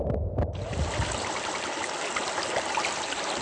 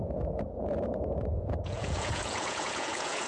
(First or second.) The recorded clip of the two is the first